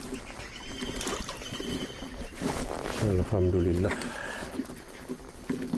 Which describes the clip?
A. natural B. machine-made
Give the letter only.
A